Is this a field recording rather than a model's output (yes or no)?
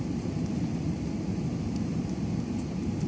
yes